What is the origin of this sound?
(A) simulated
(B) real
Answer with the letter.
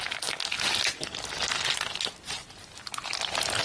B